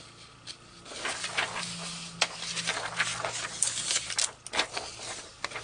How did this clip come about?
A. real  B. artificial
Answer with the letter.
A